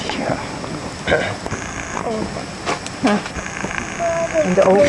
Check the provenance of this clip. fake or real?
real